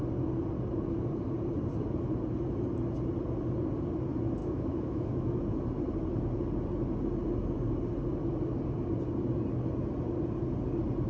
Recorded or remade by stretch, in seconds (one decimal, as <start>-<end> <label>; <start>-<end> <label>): 0.0-4.4 recorded; 4.4-5.4 remade; 5.4-11.1 recorded